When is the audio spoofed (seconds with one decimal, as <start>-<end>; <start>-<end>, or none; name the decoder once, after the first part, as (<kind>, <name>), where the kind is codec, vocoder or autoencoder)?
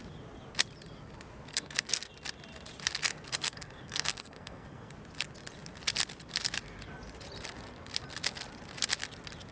1.5-2.1 (codec, SNAC); 3.1-4.9